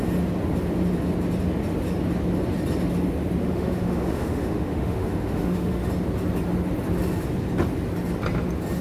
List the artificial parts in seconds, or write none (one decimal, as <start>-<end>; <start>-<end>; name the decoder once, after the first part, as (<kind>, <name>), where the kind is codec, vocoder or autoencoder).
3.4-5.9 (autoencoder, DAC-VAE)